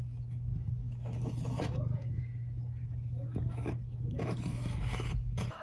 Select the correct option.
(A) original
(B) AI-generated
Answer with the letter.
B